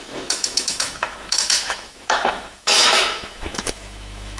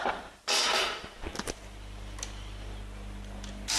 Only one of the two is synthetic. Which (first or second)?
first